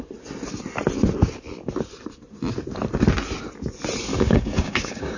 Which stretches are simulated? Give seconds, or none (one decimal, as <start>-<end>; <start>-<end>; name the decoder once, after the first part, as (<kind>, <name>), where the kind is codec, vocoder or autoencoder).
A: 4.1-5.2 (codec, DAC)